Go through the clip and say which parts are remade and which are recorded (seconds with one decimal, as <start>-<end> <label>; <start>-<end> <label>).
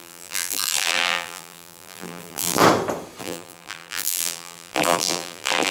0.0-2.6 remade; 2.6-3.2 recorded; 3.2-5.7 remade